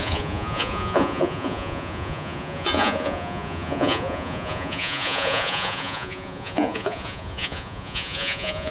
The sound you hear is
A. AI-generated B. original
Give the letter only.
A